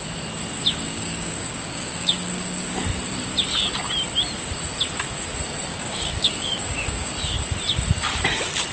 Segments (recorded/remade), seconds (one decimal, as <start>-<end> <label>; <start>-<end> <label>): 0.0-0.9 recorded; 0.9-2.7 remade; 2.7-5.7 recorded; 5.7-7.1 remade; 7.1-8.7 recorded

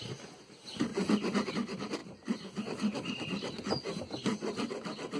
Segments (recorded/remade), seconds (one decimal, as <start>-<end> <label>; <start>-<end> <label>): 0.0-5.2 recorded

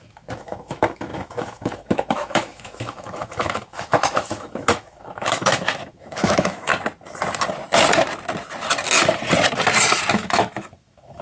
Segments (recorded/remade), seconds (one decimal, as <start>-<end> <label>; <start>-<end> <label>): 0.0-6.7 remade; 6.7-10.1 recorded; 10.1-11.2 remade

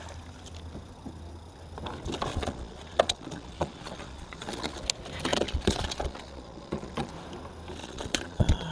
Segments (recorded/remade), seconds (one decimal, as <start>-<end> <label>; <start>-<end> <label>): 0.0-2.3 recorded; 2.3-4.8 remade; 4.8-5.3 recorded; 5.3-7.1 remade; 7.1-7.8 recorded; 7.8-8.7 remade

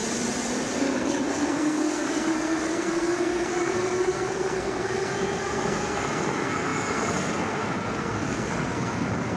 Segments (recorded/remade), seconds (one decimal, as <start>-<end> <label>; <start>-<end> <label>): 0.0-0.8 recorded; 0.8-9.4 remade

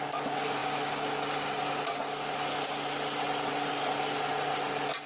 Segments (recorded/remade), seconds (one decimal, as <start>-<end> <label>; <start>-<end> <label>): 0.0-5.1 recorded

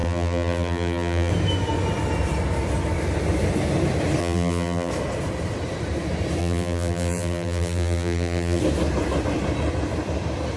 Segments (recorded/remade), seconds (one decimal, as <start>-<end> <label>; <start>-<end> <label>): 0.0-1.3 remade; 1.3-4.2 recorded; 4.2-4.9 remade; 4.9-6.4 recorded; 6.4-8.6 remade; 8.6-10.6 recorded